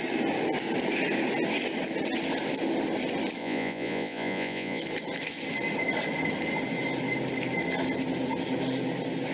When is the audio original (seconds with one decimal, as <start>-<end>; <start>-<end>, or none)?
0.0-3.4; 4.8-9.3